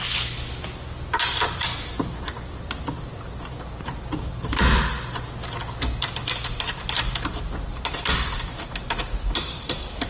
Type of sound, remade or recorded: recorded